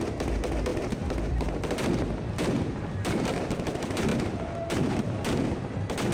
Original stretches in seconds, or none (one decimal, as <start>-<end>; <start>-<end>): 0.0-6.1